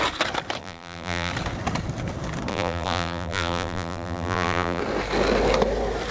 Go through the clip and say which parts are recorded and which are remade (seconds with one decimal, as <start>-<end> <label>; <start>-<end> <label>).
0.0-0.6 recorded; 0.6-1.3 remade; 1.3-2.5 recorded; 2.5-4.8 remade; 4.8-6.1 recorded